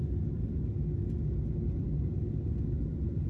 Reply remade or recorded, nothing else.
recorded